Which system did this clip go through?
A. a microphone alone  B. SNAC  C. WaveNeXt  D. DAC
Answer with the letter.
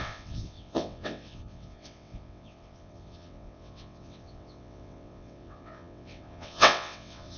C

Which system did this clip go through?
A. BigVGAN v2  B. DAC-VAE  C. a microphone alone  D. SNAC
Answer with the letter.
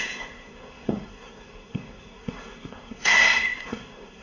D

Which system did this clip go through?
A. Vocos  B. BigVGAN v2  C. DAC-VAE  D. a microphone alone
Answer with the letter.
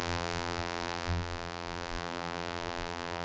B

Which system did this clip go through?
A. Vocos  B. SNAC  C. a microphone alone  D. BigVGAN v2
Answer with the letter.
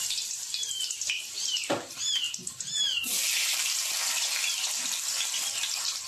D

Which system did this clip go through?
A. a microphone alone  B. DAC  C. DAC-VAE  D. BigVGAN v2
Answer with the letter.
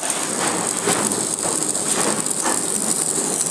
D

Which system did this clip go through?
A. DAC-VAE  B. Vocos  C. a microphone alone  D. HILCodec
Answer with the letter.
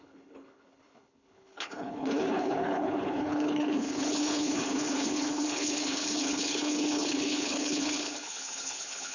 D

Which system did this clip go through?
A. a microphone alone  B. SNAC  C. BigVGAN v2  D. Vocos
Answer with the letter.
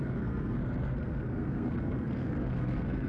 B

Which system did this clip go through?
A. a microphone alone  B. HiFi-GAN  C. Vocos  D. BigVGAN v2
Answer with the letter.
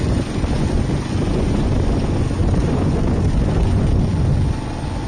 C